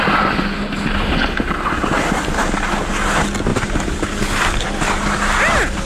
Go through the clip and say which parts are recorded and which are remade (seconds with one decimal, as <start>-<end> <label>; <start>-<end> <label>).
0.0-3.5 recorded; 3.5-4.2 remade; 4.2-5.9 recorded